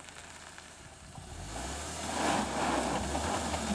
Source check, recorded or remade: recorded